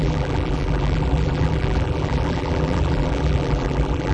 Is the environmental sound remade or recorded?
remade